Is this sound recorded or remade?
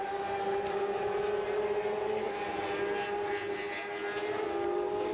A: recorded